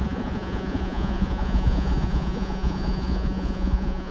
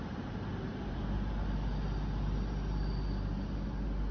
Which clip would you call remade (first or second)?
first